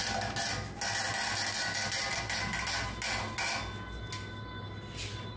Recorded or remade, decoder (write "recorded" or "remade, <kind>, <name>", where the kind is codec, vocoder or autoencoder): recorded